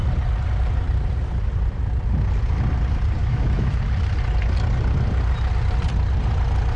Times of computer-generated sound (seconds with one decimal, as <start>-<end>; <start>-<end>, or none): 3.2-3.8